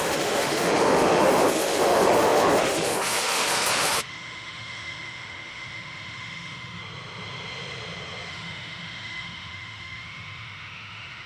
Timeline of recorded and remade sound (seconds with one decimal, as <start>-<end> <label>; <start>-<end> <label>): 0.0-6.8 remade; 6.8-8.3 recorded; 8.3-11.3 remade